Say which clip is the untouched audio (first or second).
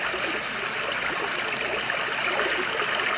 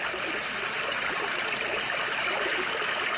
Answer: first